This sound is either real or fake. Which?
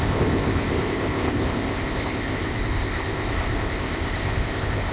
fake